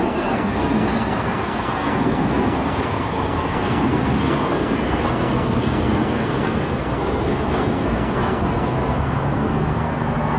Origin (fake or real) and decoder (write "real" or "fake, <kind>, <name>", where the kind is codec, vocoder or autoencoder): fake, codec, SNAC